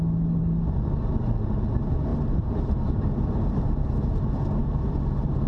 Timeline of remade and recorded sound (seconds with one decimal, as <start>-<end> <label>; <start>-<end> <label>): 0.0-2.1 recorded; 2.1-4.9 remade; 4.9-5.5 recorded